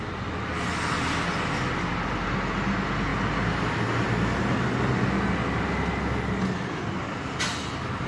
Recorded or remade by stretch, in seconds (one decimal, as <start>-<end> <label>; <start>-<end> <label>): 0.0-8.1 recorded